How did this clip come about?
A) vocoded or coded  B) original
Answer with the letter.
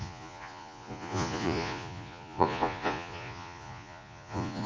A